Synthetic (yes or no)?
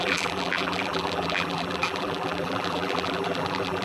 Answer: yes